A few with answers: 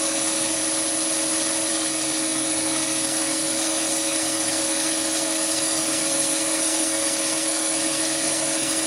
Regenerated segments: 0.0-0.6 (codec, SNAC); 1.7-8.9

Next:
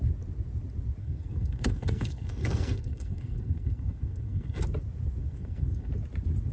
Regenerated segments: 1.0-4.6 (codec, SNAC); 5.2-5.9

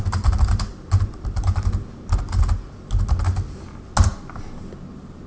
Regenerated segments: none